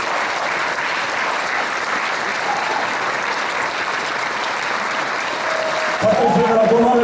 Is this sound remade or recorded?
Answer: remade